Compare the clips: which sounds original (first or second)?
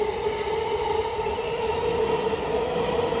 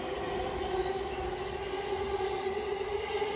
second